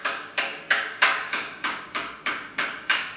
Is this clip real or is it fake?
fake